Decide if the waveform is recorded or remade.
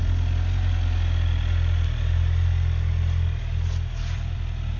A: recorded